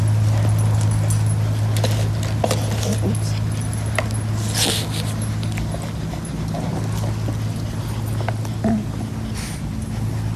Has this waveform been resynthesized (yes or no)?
no